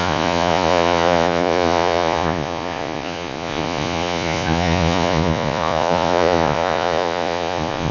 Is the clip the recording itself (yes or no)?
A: no